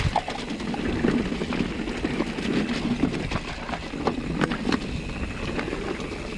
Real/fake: real